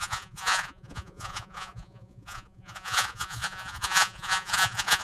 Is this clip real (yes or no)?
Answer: no